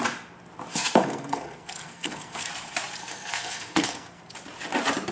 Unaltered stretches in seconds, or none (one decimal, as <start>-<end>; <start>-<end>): 0.0-0.7; 2.5-3.0; 4.2-5.1